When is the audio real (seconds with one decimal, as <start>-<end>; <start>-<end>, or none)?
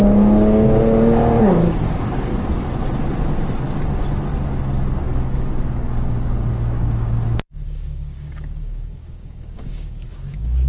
2.3-5.0